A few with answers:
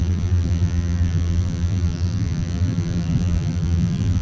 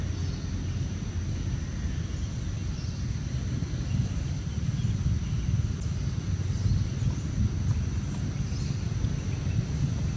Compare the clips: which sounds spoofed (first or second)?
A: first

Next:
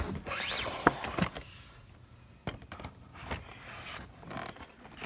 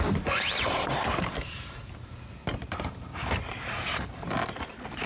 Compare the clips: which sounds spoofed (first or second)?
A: second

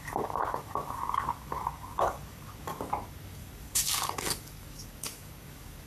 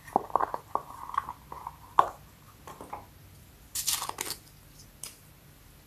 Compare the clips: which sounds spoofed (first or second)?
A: first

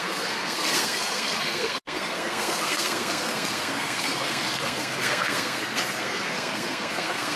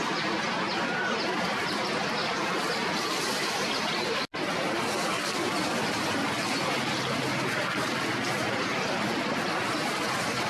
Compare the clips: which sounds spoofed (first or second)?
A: first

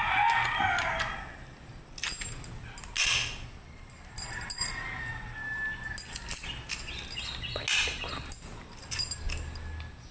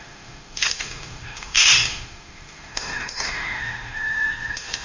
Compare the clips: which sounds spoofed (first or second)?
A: second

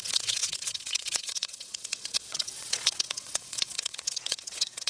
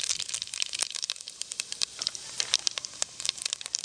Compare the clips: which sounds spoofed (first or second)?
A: first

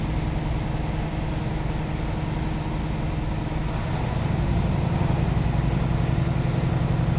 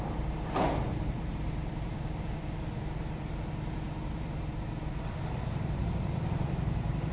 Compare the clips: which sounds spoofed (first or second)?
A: second